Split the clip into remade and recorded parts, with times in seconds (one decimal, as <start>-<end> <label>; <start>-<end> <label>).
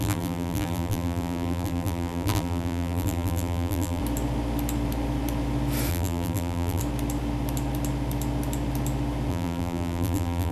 0.0-4.0 remade; 4.0-5.9 recorded; 5.9-6.8 remade; 6.8-9.3 recorded; 9.3-10.5 remade